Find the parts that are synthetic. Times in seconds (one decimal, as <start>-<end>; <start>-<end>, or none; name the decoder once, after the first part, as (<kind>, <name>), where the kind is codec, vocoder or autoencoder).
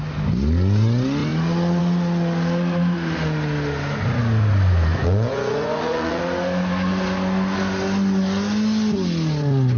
4.9-6.2 (vocoder, Vocos)